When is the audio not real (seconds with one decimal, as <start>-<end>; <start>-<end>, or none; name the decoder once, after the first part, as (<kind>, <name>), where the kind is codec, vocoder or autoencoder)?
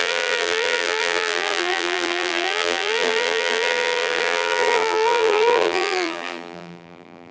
0.0-7.3 (vocoder, BigVGAN v2)